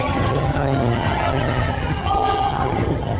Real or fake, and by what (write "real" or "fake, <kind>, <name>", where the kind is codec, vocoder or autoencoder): fake, vocoder, HiFi-GAN